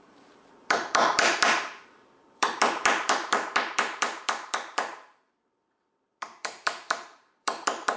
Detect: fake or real fake